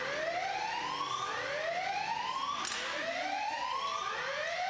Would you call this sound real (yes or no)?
yes